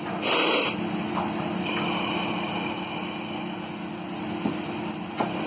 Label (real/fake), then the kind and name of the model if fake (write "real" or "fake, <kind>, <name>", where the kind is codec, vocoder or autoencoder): real